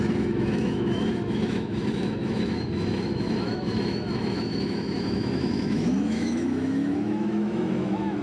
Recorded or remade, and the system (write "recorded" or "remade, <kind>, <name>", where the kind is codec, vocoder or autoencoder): remade, autoencoder, DAC-VAE